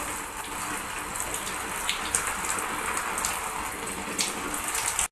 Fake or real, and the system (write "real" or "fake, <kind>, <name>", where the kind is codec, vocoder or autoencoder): real